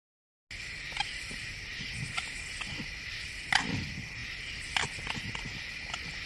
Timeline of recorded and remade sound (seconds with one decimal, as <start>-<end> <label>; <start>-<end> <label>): 0.0-6.3 recorded